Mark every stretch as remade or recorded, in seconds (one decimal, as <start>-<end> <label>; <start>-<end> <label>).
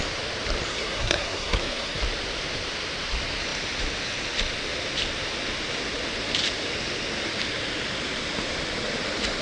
0.0-0.7 recorded; 0.7-2.0 remade; 2.0-9.4 recorded